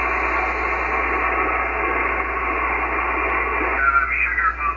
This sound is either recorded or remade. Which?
recorded